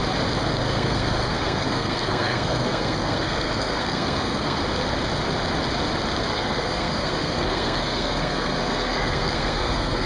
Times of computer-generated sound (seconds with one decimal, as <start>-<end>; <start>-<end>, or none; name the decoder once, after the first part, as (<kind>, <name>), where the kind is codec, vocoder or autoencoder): 0.4-4.6 (codec, SNAC); 6.2-10.1